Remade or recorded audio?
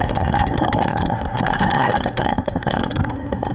remade